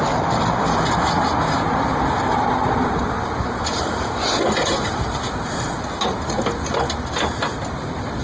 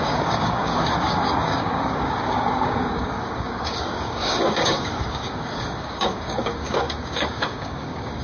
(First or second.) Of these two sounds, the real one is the first